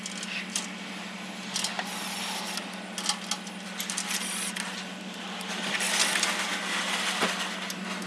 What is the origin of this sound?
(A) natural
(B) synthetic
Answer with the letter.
A